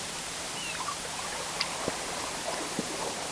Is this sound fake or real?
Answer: fake